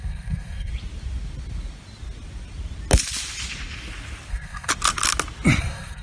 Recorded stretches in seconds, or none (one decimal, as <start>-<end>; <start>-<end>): 0.7-4.3; 4.7-5.6